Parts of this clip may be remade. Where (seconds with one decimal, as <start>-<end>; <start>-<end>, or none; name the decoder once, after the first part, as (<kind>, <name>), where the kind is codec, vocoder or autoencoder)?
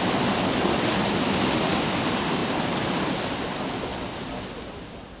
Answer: 2.4-3.1 (vocoder, BigVGAN v2)